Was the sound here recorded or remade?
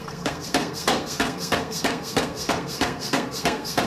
remade